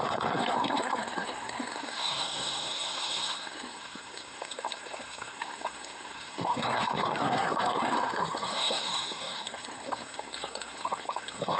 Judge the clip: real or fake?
fake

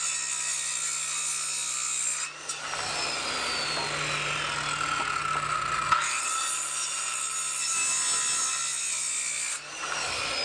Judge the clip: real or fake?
real